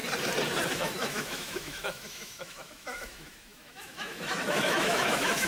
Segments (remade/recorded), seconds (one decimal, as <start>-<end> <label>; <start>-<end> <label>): 0.0-0.7 recorded; 0.7-5.5 remade